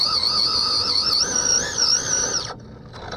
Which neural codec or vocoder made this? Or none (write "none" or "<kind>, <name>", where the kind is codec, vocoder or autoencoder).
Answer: none